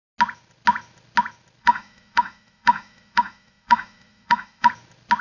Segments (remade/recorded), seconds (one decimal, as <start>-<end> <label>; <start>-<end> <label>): 0.0-1.6 recorded; 1.6-4.7 remade; 4.7-5.2 recorded